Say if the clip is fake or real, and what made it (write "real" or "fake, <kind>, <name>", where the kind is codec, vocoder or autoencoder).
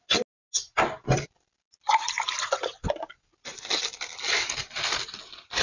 real